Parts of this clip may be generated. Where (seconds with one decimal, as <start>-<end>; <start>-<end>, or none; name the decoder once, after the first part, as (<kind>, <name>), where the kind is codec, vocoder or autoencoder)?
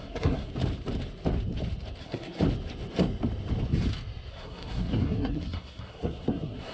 0.0-0.5 (codec, SNAC); 2.0-2.4; 4.3-6.7